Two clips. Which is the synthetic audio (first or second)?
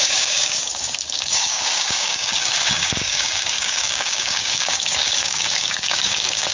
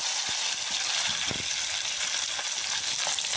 first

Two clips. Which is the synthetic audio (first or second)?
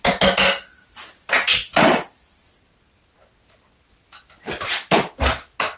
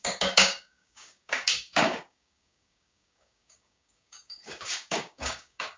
second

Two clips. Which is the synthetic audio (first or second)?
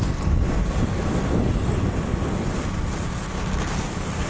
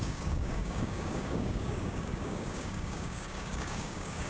second